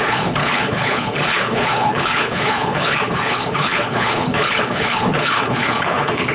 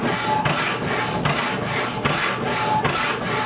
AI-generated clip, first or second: first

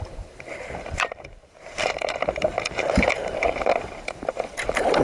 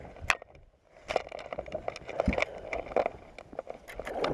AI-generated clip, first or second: first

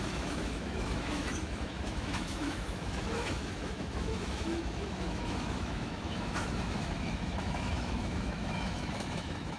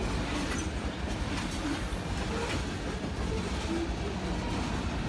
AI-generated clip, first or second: first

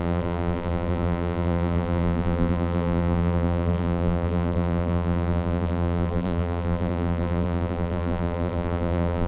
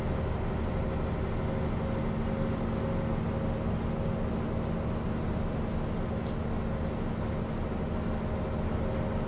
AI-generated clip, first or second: first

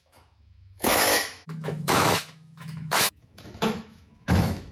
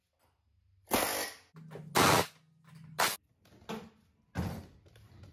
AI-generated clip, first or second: first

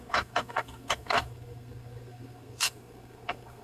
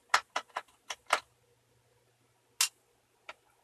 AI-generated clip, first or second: first